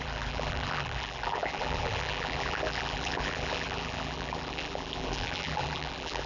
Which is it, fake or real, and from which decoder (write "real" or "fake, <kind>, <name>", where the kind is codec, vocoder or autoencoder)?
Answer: fake, vocoder, BigVGAN v2